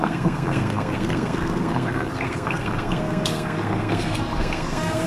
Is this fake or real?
fake